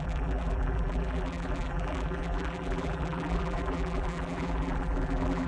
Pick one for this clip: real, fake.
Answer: fake